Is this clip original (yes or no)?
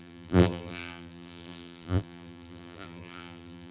no